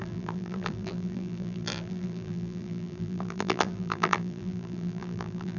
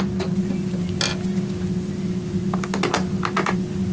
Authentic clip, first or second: second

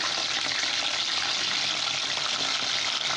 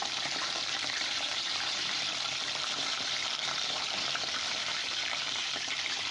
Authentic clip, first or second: first